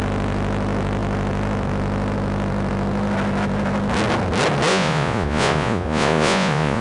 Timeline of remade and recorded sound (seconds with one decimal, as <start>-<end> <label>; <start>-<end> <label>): 0.0-4.7 recorded; 4.7-6.8 remade